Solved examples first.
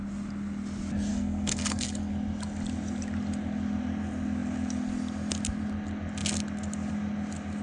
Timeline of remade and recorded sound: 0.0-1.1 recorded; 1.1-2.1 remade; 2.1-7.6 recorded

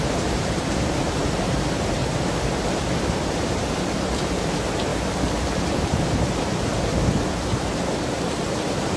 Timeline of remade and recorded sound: 0.0-2.0 remade; 2.0-3.1 recorded; 3.1-4.9 remade; 4.9-5.6 recorded; 5.6-9.0 remade

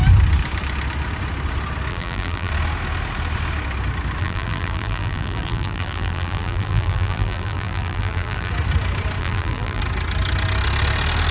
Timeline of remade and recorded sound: 0.0-1.9 recorded; 1.9-2.5 remade; 2.5-4.2 recorded; 4.2-8.5 remade; 8.5-9.2 recorded; 9.2-9.8 remade; 9.8-11.3 recorded